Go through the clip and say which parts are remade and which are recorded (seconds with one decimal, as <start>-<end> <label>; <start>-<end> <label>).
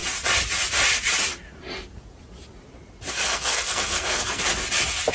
0.0-3.1 recorded; 3.1-4.5 remade; 4.5-5.1 recorded